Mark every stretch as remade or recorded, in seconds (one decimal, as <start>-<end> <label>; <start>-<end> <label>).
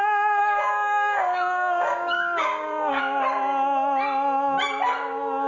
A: 0.0-0.4 recorded; 0.4-3.0 remade; 3.0-5.5 recorded